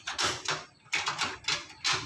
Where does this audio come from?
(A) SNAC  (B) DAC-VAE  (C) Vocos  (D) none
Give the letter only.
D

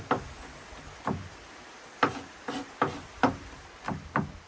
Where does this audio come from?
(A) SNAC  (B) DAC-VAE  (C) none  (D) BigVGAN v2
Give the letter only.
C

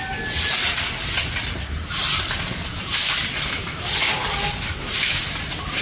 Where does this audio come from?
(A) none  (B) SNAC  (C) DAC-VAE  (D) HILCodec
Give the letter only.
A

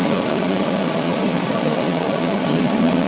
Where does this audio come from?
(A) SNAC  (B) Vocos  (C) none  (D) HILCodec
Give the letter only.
B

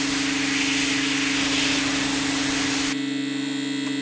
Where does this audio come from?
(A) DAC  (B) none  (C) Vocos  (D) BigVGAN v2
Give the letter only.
B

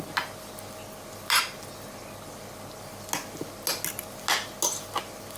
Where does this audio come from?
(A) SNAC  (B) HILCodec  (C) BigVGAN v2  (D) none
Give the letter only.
D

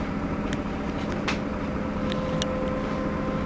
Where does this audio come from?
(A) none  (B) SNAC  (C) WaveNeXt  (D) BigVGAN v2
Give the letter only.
A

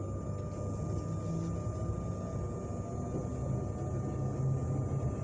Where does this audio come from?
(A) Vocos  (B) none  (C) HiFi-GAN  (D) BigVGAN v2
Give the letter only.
B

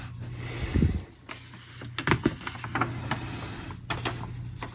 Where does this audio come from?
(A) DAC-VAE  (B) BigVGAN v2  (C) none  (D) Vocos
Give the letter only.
C